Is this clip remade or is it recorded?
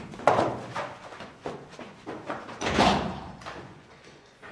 remade